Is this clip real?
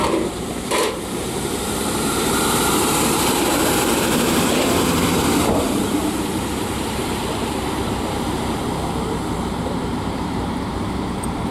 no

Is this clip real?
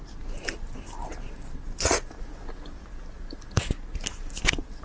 yes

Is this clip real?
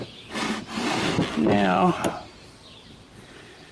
yes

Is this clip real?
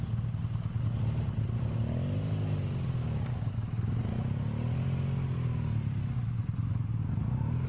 yes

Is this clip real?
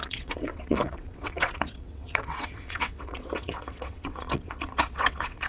no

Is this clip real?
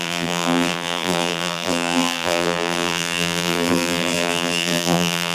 no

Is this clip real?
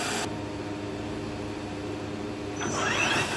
yes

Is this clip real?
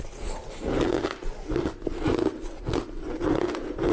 yes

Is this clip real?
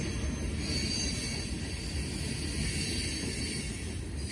yes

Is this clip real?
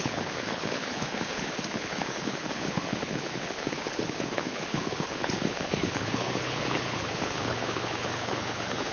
no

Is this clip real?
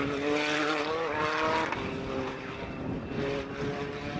yes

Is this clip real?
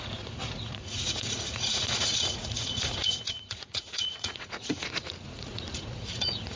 no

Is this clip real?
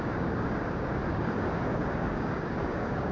no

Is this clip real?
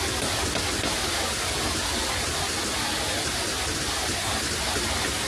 yes